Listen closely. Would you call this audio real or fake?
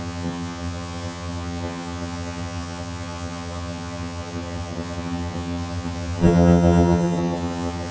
fake